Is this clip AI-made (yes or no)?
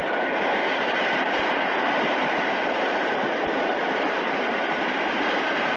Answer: yes